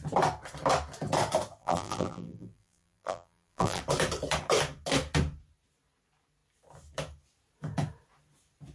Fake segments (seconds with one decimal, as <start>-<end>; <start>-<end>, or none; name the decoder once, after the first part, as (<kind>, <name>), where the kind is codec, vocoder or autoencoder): 1.6-3.8 (vocoder, BigVGAN v2)